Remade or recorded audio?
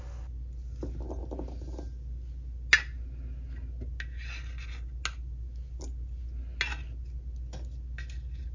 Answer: recorded